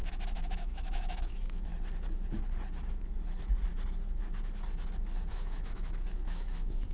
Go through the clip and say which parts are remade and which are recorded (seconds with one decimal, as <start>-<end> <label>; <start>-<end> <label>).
0.0-1.7 remade; 1.7-5.3 recorded; 5.3-6.9 remade